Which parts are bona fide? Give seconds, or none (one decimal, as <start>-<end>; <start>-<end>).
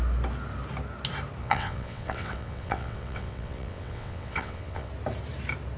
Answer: 0.0-1.4; 4.9-5.8